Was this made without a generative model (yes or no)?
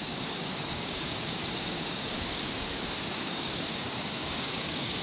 no